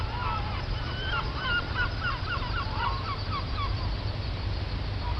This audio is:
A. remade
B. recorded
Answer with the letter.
A